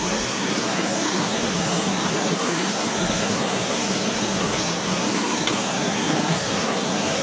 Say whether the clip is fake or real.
fake